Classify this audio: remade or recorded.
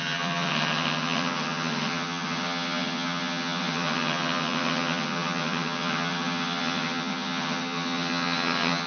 remade